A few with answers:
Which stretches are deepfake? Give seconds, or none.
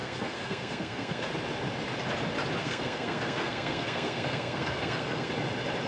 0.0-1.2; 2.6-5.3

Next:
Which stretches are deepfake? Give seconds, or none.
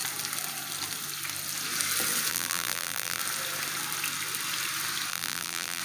2.3-3.2; 5.1-5.8